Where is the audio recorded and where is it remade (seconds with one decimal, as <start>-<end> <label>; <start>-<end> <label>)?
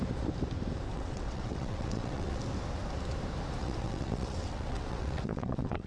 0.0-0.9 recorded; 0.9-2.4 remade; 2.4-3.6 recorded; 3.6-5.9 remade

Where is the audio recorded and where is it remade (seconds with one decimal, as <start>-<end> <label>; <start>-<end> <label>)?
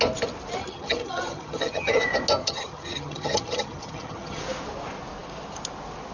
0.0-0.6 recorded; 0.6-2.0 remade; 2.0-2.4 recorded; 2.4-4.4 remade; 4.4-6.1 recorded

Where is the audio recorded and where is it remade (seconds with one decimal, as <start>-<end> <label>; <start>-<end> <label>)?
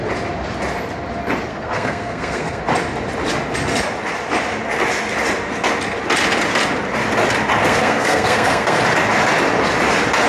0.0-1.5 recorded; 1.5-2.6 remade; 2.6-7.6 recorded; 7.6-8.8 remade; 8.8-10.3 recorded